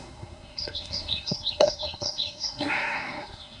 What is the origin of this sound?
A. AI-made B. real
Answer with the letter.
A